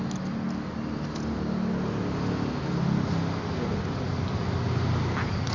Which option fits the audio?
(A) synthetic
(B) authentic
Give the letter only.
B